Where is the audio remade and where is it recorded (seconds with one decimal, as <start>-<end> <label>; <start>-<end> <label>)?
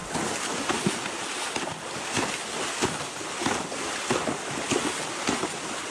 0.0-5.9 recorded